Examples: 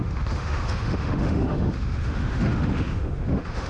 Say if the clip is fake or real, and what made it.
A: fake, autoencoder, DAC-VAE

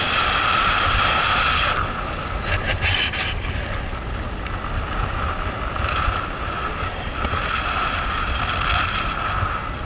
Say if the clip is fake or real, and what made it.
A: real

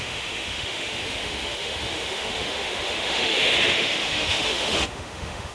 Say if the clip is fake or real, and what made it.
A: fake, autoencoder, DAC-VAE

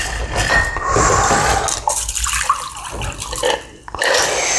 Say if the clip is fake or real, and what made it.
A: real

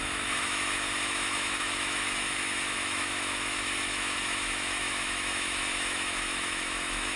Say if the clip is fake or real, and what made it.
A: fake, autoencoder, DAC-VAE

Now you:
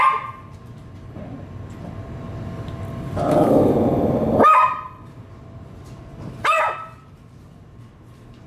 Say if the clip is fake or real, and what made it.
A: real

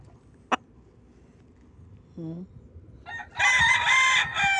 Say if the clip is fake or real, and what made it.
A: real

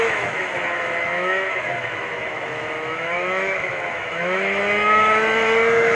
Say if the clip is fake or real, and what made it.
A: fake, autoencoder, DAC-VAE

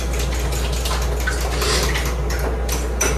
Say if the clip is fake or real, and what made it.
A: real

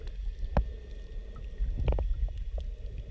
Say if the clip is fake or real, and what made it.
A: real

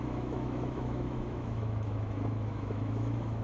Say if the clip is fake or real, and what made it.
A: fake, autoencoder, DAC-VAE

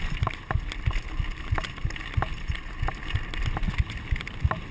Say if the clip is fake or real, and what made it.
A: real